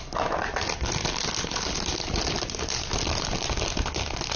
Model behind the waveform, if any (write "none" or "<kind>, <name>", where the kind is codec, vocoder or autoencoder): none